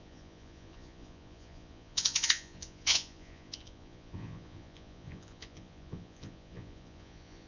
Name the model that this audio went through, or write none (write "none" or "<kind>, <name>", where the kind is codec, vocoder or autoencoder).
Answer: vocoder, Vocos